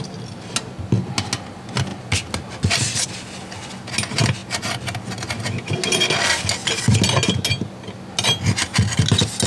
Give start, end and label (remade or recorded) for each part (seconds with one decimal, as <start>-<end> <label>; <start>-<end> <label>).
0.0-9.5 recorded